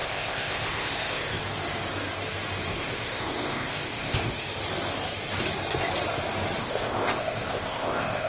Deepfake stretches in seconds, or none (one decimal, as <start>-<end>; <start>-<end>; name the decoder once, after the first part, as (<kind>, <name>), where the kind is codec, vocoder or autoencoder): 0.0-1.4 (codec, ZipCodec); 2.7-4.3; 6.6-8.3